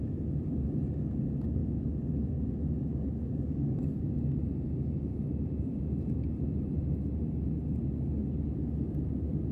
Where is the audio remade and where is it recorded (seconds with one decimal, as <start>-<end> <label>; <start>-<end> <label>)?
0.0-2.9 recorded; 2.9-4.1 remade; 4.1-9.5 recorded